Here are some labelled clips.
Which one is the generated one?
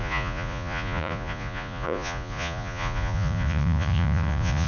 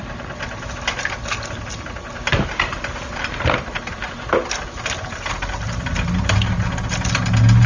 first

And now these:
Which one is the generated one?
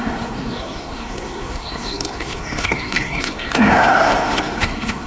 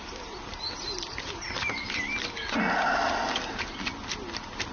first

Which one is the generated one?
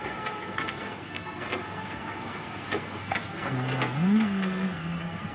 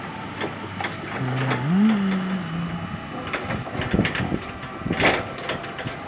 first